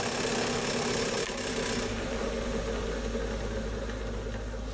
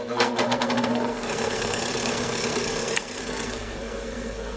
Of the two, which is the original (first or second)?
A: first